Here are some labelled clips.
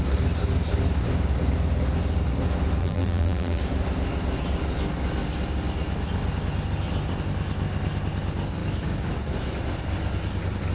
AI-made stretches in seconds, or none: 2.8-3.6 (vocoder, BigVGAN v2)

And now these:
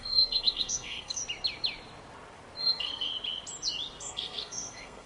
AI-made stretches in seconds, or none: 0.0-1.2 (codec, SNAC); 2.6-3.1; 4.0-5.1

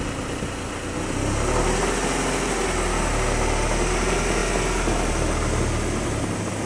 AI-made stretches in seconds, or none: none